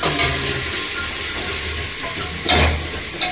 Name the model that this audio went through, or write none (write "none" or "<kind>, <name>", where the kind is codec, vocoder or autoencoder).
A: none